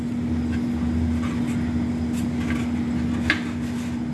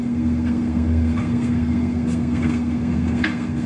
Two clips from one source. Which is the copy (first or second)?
second